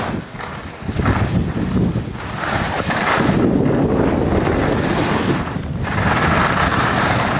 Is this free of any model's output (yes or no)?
yes